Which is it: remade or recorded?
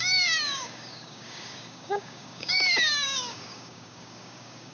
remade